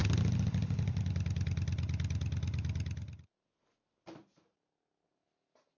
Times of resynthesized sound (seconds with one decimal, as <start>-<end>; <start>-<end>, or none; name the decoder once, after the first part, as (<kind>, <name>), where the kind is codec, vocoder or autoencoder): none